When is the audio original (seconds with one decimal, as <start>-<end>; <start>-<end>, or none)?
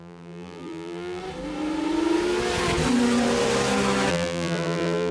1.2-4.1